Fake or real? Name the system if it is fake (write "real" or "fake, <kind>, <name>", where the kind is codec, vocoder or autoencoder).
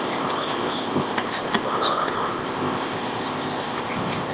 fake, codec, ZipCodec